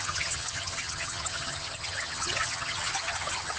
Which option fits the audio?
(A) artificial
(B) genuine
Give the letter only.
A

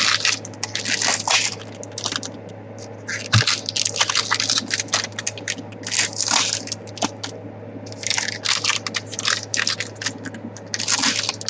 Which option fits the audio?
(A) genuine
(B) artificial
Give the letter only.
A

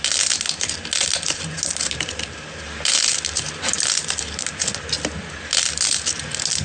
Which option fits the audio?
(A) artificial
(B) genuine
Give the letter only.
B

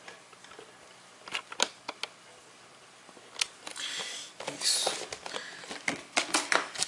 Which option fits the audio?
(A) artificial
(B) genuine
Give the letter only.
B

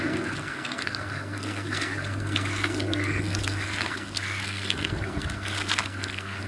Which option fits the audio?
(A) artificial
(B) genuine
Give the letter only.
A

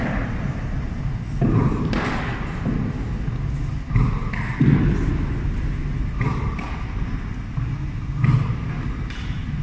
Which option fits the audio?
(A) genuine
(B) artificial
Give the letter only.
A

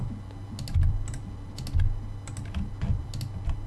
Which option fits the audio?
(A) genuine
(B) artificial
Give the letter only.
A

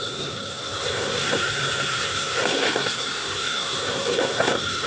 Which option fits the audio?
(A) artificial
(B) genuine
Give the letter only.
A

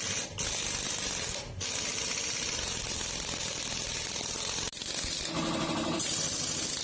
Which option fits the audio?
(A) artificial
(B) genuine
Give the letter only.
B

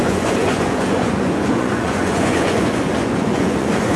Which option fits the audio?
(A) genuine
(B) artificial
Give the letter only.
B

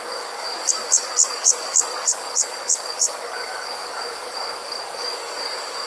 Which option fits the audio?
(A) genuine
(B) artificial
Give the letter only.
B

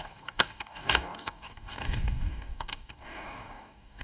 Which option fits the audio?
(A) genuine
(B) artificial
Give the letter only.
B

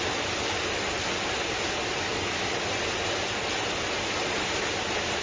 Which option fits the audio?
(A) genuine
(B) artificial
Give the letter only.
A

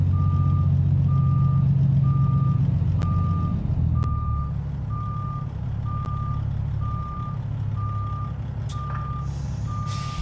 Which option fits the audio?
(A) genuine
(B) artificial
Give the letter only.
A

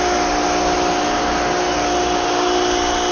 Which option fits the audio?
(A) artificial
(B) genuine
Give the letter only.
B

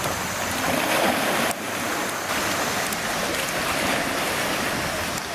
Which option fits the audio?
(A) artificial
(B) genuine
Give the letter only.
B